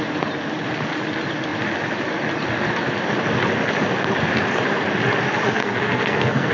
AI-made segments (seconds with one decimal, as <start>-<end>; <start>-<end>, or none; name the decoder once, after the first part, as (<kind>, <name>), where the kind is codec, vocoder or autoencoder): 5.6-6.5 (codec, SNAC)